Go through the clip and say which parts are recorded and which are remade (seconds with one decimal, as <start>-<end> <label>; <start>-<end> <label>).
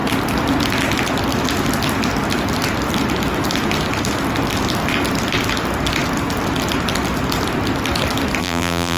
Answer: 0.0-8.4 recorded; 8.4-9.0 remade